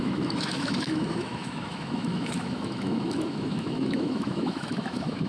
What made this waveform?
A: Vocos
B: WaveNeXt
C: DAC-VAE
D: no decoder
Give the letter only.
C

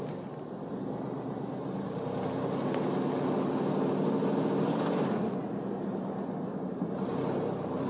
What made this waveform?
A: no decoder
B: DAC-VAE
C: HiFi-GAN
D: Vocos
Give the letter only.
A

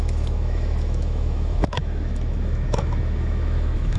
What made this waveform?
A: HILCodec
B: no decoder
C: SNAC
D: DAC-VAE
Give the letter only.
D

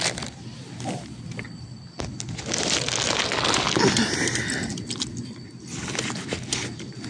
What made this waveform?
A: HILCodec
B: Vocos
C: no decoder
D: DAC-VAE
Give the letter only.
C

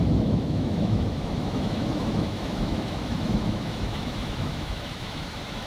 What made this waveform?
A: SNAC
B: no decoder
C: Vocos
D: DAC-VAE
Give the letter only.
D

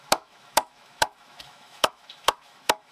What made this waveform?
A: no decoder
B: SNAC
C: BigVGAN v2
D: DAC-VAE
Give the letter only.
D